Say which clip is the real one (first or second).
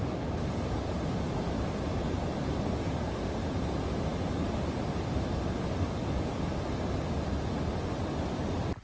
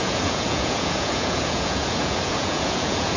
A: first